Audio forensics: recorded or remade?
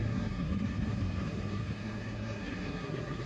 remade